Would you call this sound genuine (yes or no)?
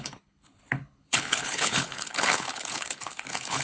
no